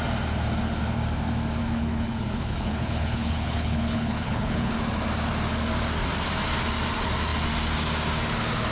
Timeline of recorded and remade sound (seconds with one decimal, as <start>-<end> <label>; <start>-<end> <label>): 0.0-1.6 recorded; 1.6-4.7 remade; 4.7-8.7 recorded